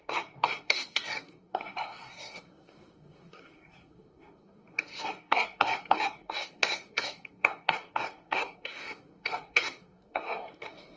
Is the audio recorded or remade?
remade